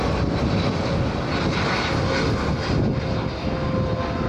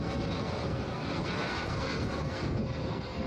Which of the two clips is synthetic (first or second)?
second